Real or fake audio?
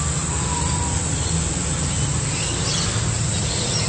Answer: real